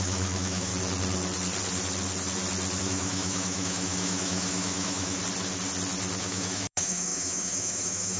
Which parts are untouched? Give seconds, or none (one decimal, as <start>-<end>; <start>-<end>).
0.7-2.8; 5.2-6.2